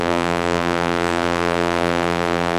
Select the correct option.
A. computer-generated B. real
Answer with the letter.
A